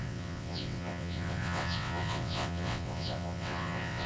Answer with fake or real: fake